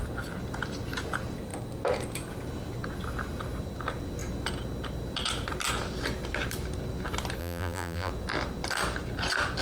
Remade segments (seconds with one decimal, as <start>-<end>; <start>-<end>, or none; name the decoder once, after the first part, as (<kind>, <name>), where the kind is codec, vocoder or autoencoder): 7.4-8.1 (vocoder, BigVGAN v2)